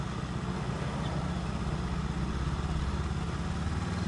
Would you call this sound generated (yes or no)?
no